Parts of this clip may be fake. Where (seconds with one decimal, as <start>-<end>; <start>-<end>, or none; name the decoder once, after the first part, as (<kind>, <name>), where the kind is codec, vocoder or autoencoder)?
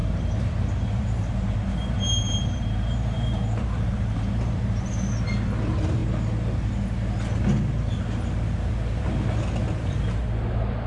0.0-4.9 (vocoder, BigVGAN v2); 9.6-10.2